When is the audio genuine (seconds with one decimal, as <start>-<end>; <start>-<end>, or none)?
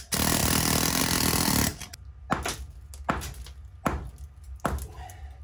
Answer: 0.0-5.4